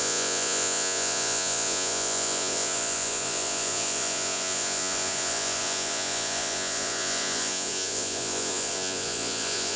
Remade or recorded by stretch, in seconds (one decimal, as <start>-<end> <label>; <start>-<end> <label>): 0.0-9.8 remade